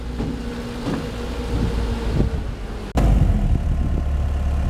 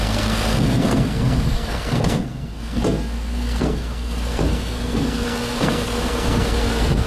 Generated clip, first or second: second